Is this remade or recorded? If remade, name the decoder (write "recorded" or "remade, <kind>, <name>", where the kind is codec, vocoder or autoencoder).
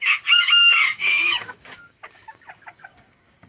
remade, codec, DAC